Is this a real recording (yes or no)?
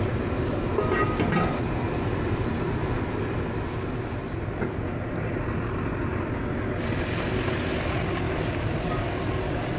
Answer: yes